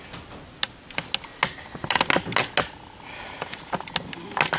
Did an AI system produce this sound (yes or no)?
no